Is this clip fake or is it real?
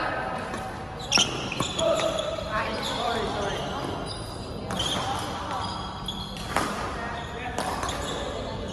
real